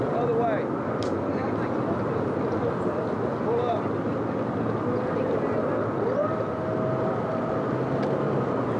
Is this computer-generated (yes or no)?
no